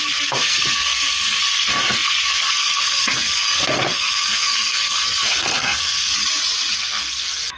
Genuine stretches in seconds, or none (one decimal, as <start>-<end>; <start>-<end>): 6.1-6.8